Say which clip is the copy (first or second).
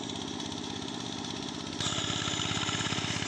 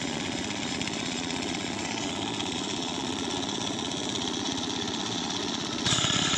second